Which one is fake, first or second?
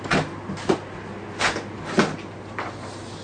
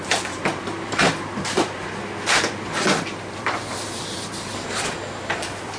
second